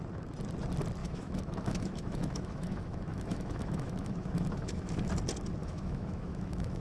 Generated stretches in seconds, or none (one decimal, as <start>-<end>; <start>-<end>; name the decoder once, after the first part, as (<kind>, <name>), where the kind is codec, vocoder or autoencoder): 1.0-5.1 (autoencoder, DAC-VAE); 5.6-6.8